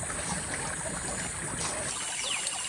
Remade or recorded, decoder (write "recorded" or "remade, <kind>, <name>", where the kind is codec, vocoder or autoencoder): recorded